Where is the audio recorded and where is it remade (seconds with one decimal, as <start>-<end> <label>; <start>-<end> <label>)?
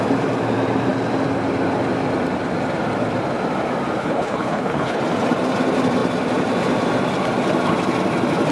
0.0-4.0 recorded; 4.0-5.0 remade; 5.0-8.5 recorded